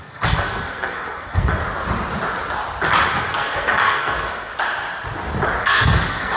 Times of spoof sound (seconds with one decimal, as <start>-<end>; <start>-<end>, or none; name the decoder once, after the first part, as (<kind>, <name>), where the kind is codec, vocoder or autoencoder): 0.0-1.6 (codec, SNAC); 3.1-4.5; 5.6-6.4